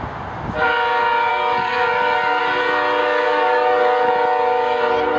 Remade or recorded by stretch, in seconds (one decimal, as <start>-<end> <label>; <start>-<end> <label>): 0.0-1.3 recorded; 1.3-2.4 remade; 2.4-3.0 recorded; 3.0-4.1 remade; 4.1-5.2 recorded

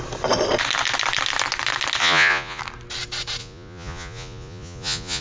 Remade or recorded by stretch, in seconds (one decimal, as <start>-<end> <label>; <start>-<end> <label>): 0.0-2.0 recorded; 2.0-2.6 remade; 2.6-3.4 recorded; 3.4-5.2 remade

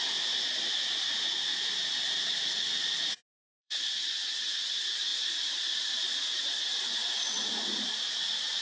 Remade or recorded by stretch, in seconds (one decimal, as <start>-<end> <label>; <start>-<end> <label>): 0.0-3.3 recorded; 3.3-3.9 remade; 3.9-5.1 recorded; 5.1-5.9 remade; 5.9-6.9 recorded; 6.9-8.1 remade; 8.1-8.6 recorded